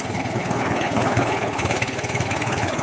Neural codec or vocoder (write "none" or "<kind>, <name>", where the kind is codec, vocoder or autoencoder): codec, HILCodec